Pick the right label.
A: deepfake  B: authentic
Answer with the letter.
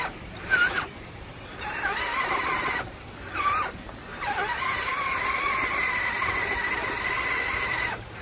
A